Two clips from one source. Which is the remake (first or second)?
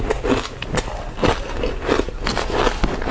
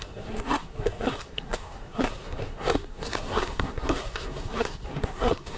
second